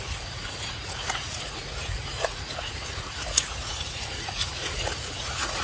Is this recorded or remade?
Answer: remade